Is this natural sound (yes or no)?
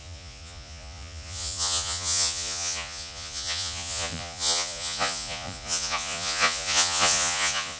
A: no